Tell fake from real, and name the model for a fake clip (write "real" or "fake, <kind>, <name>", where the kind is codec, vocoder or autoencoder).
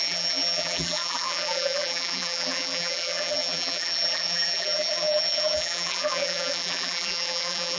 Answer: fake, vocoder, BigVGAN v2